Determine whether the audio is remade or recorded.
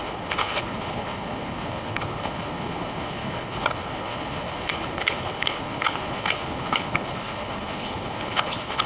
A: remade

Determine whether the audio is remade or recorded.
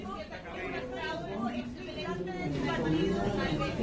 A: recorded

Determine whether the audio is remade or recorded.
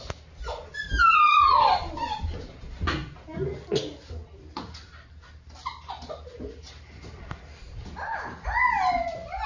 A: recorded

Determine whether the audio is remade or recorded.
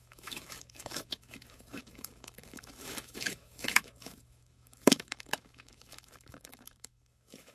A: remade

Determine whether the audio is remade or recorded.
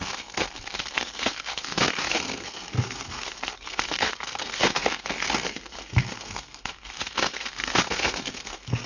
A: remade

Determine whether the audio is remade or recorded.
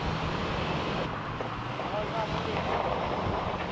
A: recorded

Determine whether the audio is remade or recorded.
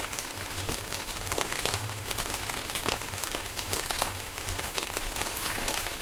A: remade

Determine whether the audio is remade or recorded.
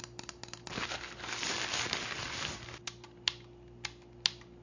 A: recorded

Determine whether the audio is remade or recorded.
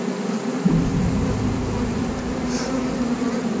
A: recorded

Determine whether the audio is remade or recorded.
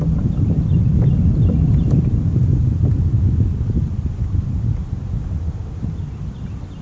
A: recorded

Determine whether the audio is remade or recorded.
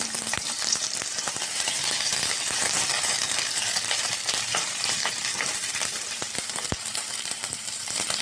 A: remade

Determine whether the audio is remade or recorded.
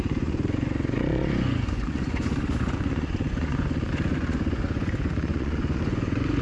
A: remade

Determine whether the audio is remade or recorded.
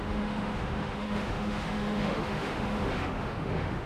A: remade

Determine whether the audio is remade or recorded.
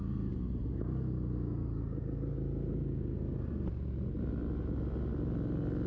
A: recorded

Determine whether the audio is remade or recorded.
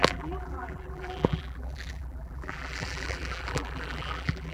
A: remade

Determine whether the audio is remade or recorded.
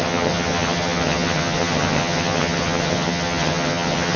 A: remade